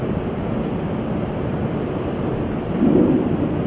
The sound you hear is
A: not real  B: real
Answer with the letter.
B